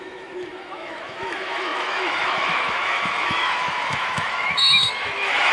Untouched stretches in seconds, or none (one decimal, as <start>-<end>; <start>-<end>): none